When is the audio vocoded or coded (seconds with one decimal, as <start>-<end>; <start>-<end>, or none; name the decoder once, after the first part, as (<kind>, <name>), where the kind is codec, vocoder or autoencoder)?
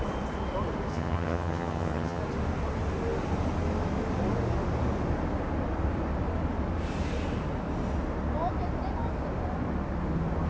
0.9-2.2 (vocoder, HiFi-GAN)